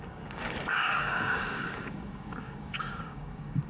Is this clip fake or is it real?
fake